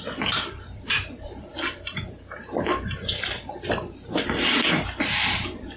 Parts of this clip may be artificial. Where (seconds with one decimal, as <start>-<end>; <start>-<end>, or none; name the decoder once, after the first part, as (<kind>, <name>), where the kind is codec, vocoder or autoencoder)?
0.0-1.5 (vocoder, BigVGAN v2); 5.0-5.8